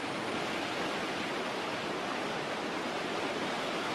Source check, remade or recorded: recorded